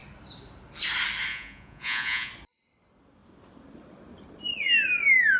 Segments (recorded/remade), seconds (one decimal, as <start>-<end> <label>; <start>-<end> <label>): 0.0-1.3 recorded; 1.3-2.3 remade; 2.3-5.4 recorded